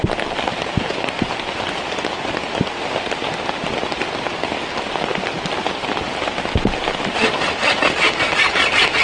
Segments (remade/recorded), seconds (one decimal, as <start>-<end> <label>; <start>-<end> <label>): 0.0-0.5 recorded; 0.5-1.5 remade; 1.5-9.0 recorded